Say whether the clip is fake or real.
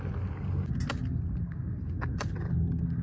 real